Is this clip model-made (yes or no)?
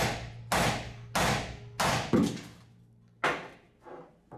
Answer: no